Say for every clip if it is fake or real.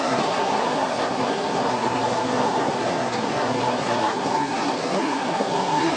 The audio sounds fake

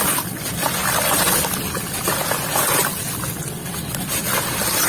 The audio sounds real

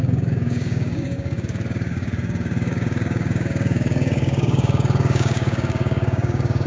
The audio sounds fake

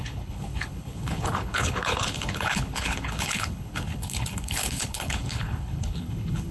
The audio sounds fake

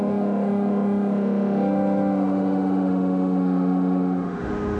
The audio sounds fake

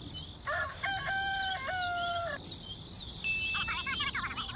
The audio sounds real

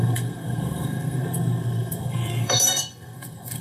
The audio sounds fake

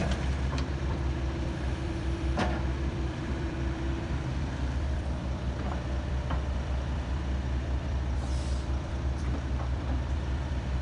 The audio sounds fake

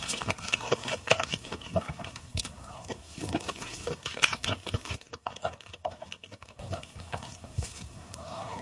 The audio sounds fake